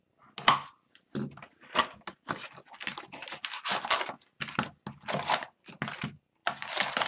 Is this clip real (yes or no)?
yes